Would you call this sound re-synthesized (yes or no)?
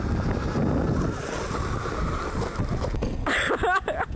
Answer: no